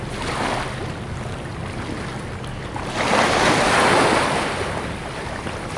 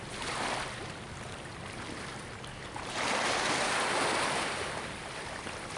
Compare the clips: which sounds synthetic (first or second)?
second